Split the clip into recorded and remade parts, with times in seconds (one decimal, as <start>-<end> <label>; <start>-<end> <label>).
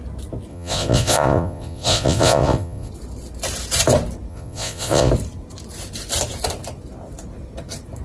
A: 0.0-0.5 recorded; 0.5-2.9 remade; 2.9-4.3 recorded; 4.3-5.1 remade; 5.1-8.0 recorded